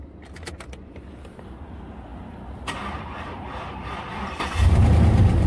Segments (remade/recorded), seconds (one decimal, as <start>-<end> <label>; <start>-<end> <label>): 0.0-5.5 recorded